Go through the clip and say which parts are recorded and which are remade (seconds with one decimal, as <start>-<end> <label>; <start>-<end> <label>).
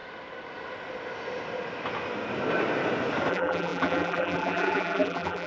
0.0-3.3 recorded; 3.3-5.5 remade